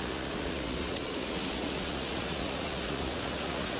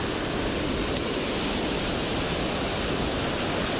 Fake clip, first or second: first